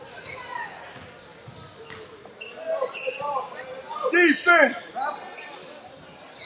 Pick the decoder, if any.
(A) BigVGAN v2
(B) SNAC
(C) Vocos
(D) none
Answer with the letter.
D